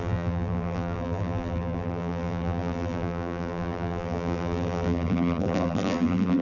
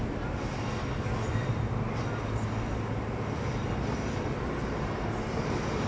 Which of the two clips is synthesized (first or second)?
first